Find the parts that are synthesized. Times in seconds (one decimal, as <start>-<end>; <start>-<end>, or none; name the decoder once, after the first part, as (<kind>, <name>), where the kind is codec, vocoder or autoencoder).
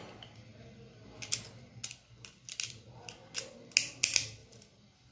4.4-5.1 (vocoder, BigVGAN v2)